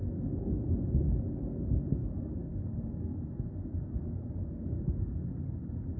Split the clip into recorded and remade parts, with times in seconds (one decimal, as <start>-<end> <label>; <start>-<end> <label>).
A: 0.0-2.0 recorded; 2.0-3.2 remade; 3.2-3.7 recorded; 3.7-5.4 remade; 5.4-6.0 recorded